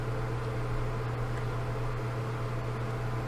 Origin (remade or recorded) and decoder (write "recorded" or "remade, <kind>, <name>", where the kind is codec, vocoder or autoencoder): recorded